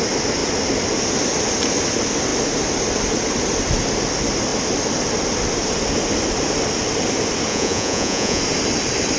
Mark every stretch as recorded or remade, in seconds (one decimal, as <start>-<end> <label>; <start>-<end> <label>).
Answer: 0.0-7.5 recorded; 7.5-8.4 remade; 8.4-9.2 recorded